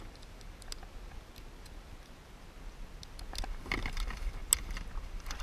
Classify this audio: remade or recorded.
recorded